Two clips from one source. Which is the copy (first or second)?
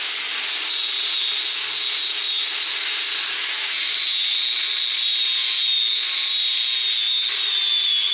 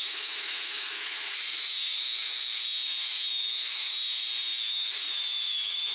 second